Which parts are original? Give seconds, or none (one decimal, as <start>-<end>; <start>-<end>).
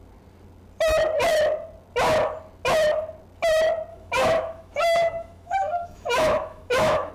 0.0-3.9